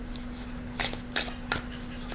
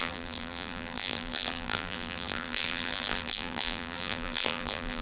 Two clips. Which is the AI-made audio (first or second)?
second